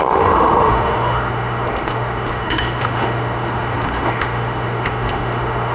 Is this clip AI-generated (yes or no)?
yes